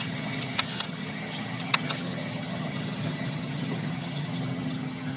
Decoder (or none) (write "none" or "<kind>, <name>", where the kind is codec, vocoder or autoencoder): vocoder, HiFi-GAN